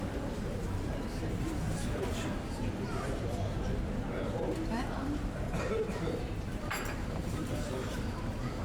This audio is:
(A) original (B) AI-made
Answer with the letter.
B